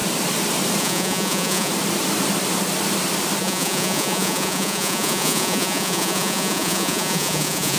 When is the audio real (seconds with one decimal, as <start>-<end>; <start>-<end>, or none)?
0.0-0.8; 1.7-3.4